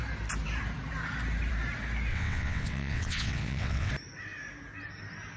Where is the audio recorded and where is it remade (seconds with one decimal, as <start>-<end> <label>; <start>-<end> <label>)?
0.0-2.1 recorded; 2.1-3.9 remade; 3.9-5.4 recorded